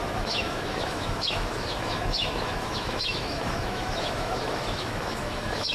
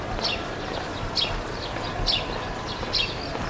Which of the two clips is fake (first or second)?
first